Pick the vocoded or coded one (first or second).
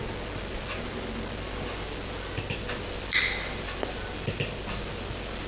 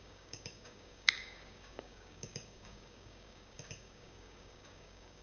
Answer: second